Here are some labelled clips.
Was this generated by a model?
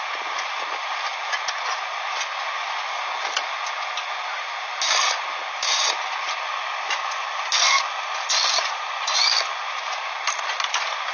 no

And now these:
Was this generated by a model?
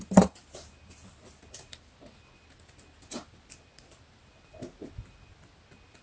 no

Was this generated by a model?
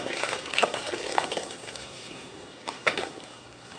yes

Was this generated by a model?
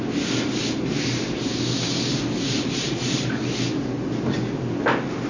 no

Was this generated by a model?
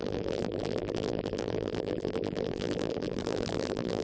yes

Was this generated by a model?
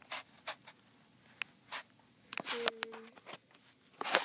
no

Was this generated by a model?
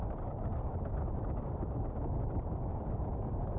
yes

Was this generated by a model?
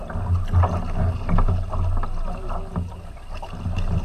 no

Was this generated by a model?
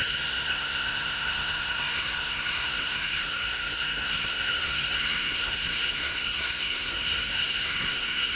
yes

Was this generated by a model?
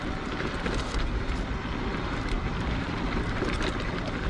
no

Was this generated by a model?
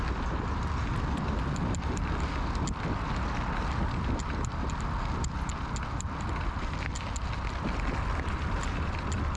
no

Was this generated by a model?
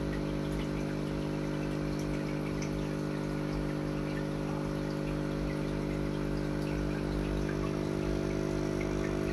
no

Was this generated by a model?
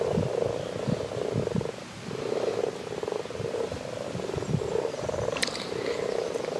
no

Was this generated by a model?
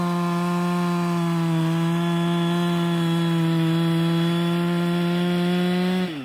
no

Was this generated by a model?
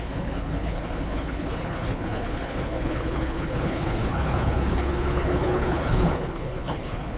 yes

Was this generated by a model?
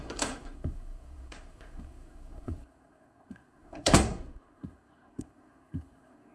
yes